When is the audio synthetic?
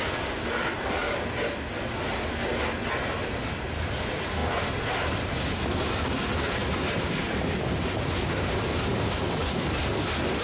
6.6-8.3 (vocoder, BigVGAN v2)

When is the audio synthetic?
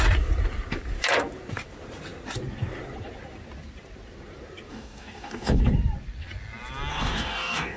4.7-5.6 (codec, DAC); 6.9-7.8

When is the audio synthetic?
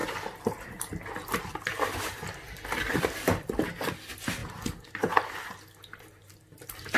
0.0-3.6 (vocoder, BigVGAN v2); 4.4-5.3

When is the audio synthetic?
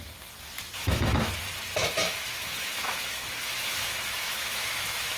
0.8-1.3 (autoencoder, DAC-VAE); 1.8-5.2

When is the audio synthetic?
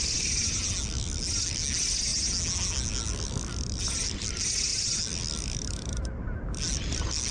none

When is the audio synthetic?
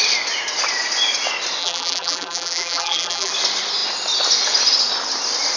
1.6-3.3 (vocoder, BigVGAN v2)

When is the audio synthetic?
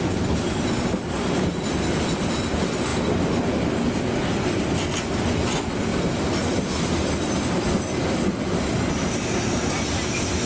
none